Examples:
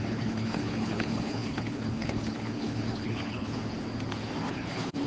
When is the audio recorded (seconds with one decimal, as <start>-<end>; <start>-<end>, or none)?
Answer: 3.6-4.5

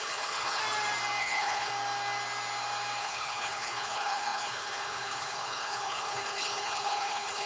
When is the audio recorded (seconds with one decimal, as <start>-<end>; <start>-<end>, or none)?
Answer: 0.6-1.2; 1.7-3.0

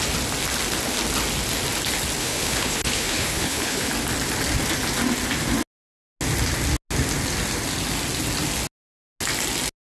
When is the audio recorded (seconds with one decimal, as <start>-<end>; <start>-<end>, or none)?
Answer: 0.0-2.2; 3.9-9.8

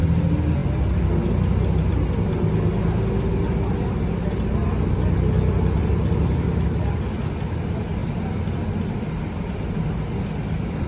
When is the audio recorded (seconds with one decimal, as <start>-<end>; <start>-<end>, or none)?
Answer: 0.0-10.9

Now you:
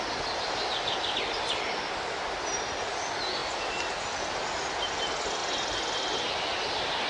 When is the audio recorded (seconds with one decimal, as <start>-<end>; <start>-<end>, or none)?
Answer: 0.0-7.1

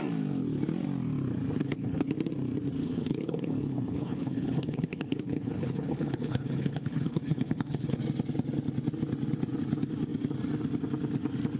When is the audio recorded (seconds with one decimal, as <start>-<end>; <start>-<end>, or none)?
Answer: 0.0-1.6; 2.1-2.8; 8.0-11.6

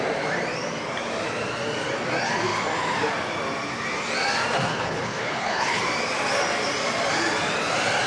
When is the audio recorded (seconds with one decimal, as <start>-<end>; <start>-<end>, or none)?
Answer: 0.0-4.7; 5.8-8.1